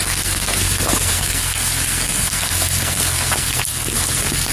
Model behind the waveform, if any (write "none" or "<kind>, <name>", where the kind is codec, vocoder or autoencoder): codec, SNAC